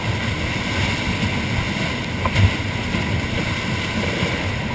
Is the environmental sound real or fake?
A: real